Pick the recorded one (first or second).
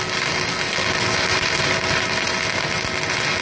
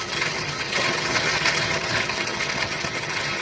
first